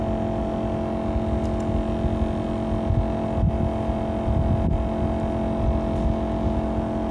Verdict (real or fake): real